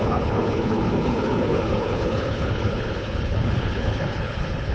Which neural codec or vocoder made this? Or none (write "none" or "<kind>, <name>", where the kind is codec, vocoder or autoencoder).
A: codec, HILCodec